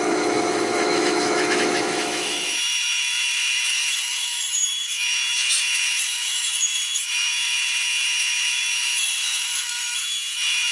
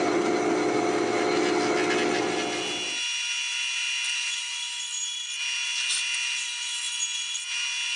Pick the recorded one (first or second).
second